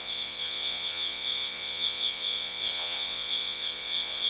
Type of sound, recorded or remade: remade